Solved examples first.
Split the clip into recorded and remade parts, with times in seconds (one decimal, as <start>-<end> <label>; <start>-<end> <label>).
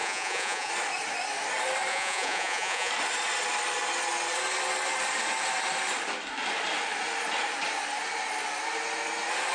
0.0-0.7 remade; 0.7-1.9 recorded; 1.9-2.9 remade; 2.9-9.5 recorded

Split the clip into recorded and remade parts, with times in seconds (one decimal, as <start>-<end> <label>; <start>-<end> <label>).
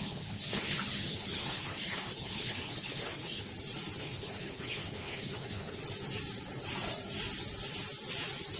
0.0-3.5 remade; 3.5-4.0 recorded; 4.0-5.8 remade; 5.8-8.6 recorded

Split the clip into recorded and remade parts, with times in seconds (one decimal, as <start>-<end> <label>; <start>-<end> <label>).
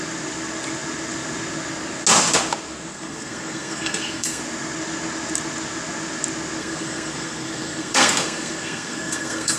0.0-2.9 recorded; 2.9-4.4 remade; 4.4-6.6 recorded; 6.6-9.6 remade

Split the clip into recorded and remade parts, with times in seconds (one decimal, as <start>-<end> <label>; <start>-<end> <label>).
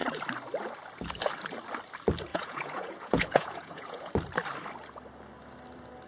0.0-2.3 recorded; 2.3-4.1 remade; 4.1-6.1 recorded